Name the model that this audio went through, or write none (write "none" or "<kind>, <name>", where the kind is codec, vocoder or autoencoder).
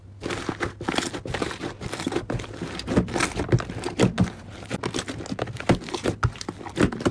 none